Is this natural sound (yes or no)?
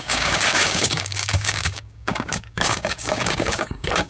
no